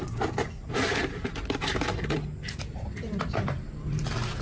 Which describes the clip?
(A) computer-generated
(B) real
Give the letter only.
B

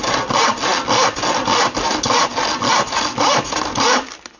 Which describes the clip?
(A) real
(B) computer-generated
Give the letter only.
A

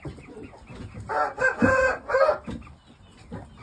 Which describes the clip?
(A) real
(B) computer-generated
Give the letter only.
A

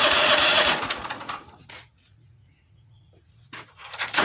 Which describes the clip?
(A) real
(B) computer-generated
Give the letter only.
B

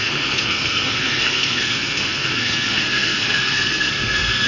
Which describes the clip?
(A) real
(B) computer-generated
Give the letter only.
B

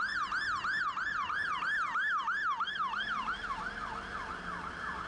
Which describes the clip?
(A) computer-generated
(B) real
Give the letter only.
B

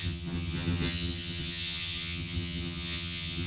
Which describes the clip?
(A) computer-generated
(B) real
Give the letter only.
A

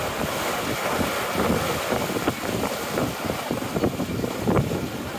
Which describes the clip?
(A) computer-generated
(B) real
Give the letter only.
B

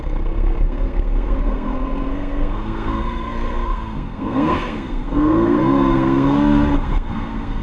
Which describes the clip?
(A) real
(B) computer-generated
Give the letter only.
B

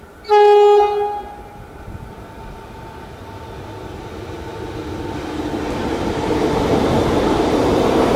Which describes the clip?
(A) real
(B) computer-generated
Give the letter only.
A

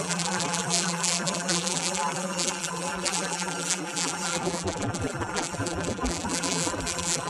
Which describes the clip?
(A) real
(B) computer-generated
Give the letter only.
B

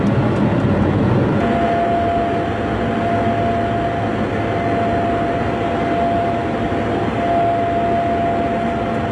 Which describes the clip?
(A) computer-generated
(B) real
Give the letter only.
B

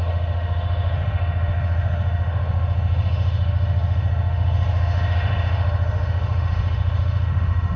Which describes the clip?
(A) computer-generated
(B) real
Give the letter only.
A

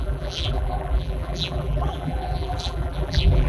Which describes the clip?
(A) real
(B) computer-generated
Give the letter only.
B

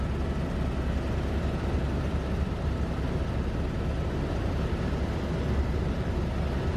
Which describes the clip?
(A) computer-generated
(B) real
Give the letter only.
B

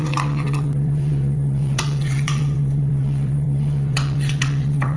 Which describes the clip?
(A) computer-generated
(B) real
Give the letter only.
A